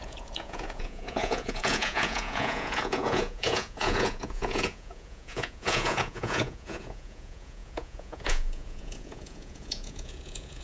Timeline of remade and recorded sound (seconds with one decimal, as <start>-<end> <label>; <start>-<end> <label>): 0.0-10.6 remade